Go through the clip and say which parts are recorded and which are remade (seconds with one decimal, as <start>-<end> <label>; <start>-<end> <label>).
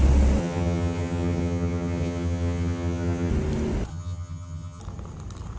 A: 0.0-0.4 recorded; 0.4-3.3 remade; 3.3-3.9 recorded; 3.9-4.8 remade; 4.8-5.6 recorded